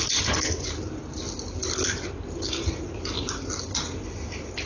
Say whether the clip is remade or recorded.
recorded